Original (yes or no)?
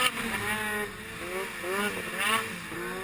yes